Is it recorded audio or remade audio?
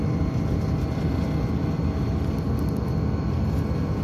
recorded